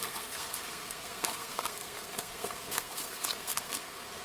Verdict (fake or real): fake